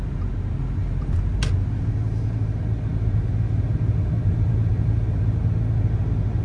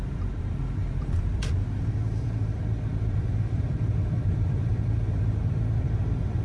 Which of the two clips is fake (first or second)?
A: second